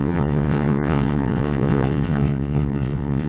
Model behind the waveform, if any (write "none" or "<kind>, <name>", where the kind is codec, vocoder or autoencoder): vocoder, WaveNeXt